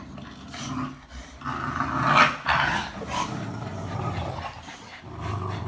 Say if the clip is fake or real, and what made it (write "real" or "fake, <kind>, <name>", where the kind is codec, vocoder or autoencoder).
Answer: real